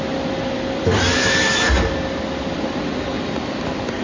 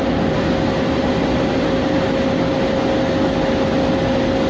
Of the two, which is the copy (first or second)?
first